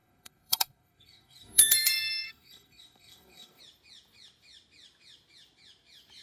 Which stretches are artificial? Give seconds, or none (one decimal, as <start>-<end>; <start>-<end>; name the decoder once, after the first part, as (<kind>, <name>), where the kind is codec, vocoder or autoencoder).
0.0-3.6 (codec, SNAC)